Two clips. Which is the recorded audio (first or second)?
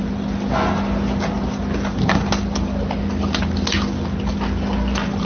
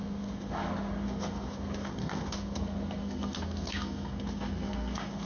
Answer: first